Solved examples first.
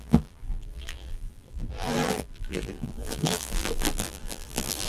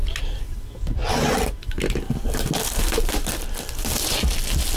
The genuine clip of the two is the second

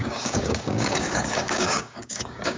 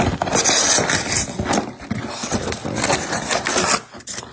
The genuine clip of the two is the second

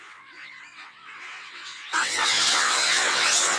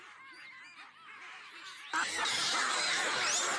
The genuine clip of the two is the second